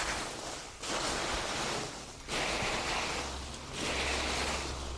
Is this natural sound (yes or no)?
yes